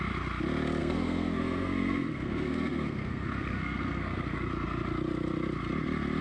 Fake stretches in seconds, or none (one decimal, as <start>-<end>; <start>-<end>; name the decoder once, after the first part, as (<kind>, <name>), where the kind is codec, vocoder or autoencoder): 0.8-4.5 (codec, SNAC)